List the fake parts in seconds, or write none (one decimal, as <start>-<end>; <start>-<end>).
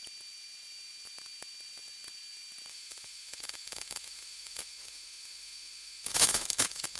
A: 2.7-7.0